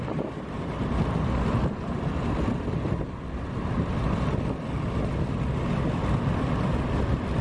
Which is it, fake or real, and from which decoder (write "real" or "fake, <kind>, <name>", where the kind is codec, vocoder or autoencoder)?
real